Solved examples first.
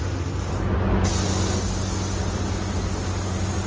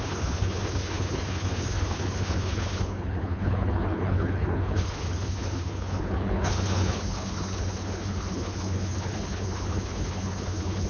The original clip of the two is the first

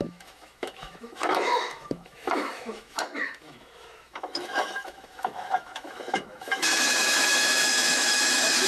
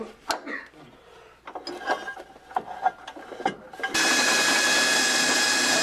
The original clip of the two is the second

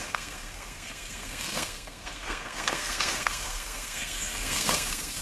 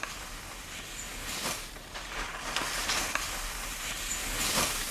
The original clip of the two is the second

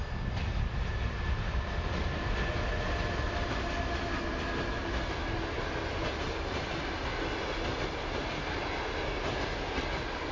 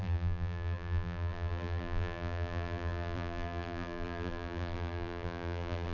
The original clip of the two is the first